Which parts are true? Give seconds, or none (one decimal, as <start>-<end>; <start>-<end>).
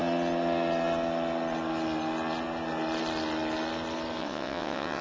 0.0-4.2